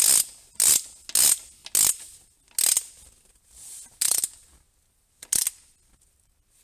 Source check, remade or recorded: recorded